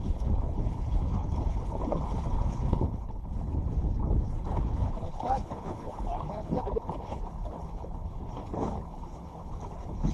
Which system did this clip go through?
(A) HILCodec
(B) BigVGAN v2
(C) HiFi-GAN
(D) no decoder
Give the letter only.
A